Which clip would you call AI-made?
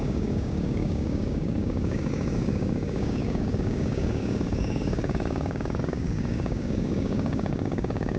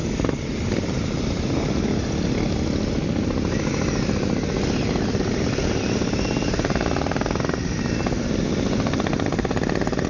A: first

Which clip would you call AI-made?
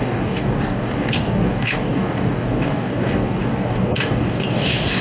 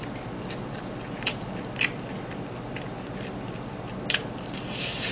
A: first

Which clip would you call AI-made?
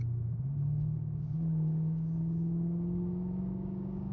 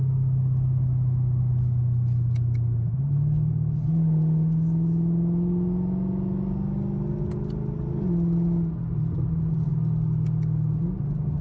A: first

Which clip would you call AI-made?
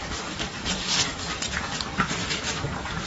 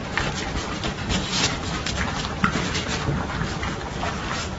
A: first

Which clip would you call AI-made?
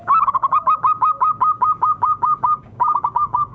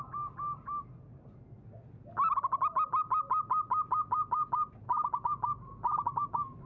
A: first